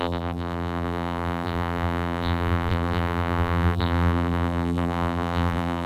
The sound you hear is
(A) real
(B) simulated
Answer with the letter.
B